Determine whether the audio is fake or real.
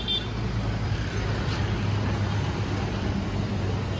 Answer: real